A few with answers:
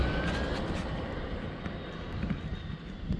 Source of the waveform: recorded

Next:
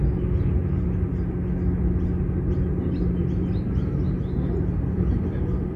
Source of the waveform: recorded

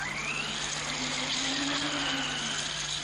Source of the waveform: recorded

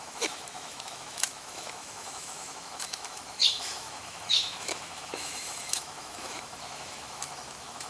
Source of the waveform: remade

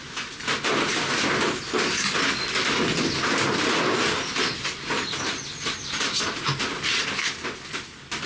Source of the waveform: recorded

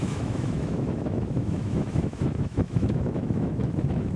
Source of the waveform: remade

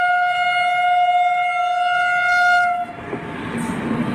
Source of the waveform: recorded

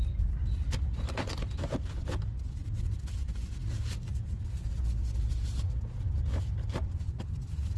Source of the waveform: recorded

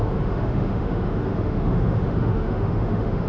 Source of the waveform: remade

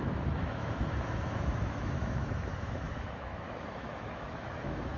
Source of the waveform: remade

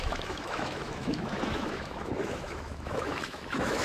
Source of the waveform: remade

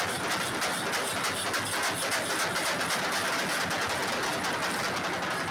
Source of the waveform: recorded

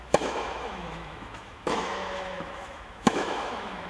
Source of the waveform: remade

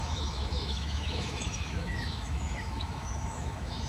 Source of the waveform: remade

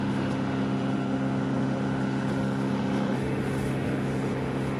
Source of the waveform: remade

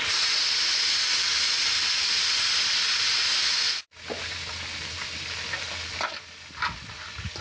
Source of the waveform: recorded